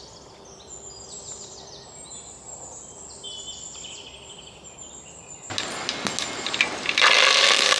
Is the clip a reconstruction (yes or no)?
no